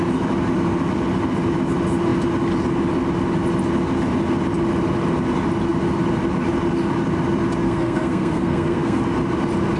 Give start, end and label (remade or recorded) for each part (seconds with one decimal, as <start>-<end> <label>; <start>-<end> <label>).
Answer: 0.0-7.6 recorded; 7.6-9.0 remade; 9.0-9.8 recorded